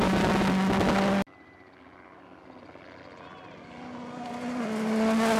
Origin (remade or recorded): recorded